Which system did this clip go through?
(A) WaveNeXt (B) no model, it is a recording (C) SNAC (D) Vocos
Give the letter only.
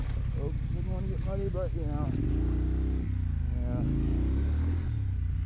B